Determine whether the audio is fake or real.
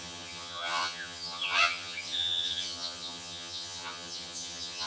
fake